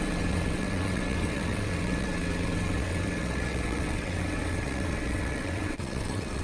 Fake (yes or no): yes